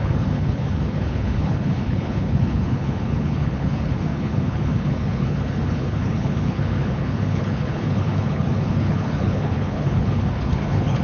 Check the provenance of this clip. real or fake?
fake